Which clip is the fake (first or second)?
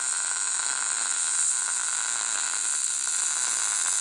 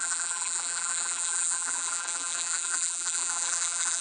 second